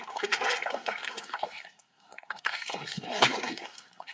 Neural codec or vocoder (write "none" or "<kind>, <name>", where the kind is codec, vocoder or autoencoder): codec, SNAC